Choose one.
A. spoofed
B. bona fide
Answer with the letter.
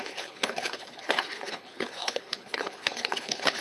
A